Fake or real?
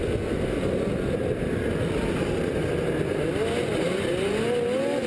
real